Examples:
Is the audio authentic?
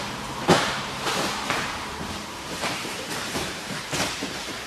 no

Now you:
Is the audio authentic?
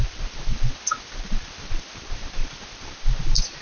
yes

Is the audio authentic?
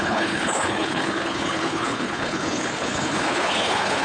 no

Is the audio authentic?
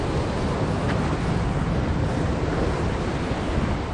yes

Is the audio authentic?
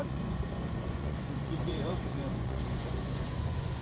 no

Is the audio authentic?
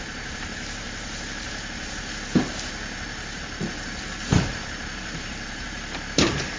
no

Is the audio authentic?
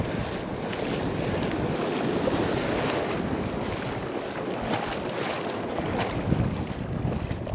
yes